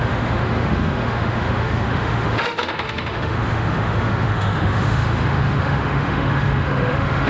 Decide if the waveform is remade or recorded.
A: remade